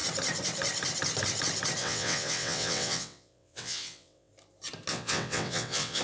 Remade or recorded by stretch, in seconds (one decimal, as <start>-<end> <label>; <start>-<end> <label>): 0.0-1.8 recorded; 1.8-4.3 remade; 4.3-4.9 recorded; 4.9-6.0 remade